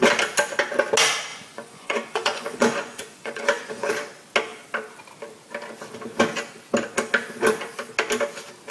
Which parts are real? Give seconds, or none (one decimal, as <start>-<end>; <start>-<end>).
0.0-1.3; 3.9-8.7